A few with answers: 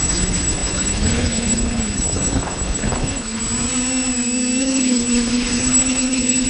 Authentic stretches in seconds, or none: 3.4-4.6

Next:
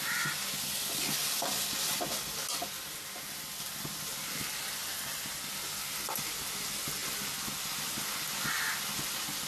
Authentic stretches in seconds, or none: 0.0-9.5

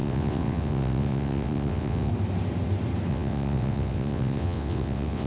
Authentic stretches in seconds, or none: 2.1-3.1

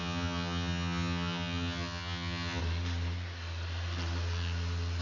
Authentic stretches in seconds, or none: 2.6-5.0

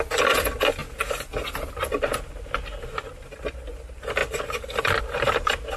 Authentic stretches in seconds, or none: 0.0-5.8

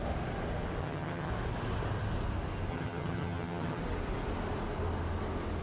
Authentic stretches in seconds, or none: 0.0-0.8; 1.3-2.7; 3.8-5.6